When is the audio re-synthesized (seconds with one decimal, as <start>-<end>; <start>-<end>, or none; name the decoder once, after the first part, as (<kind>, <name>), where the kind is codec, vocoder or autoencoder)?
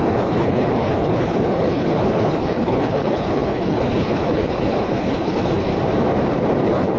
0.0-5.7 (codec, HILCodec); 6.6-7.0